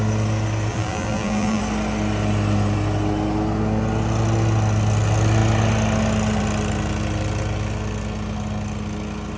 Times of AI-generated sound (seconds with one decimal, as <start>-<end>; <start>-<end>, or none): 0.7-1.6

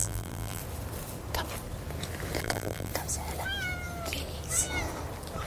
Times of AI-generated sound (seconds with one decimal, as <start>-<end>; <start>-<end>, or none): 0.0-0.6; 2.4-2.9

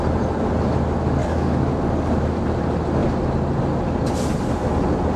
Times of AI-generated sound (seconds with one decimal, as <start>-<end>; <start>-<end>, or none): 1.2-2.4

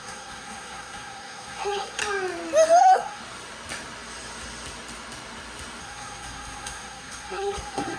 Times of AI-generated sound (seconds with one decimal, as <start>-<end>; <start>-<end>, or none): 0.0-2.0; 2.8-3.2; 5.8-8.0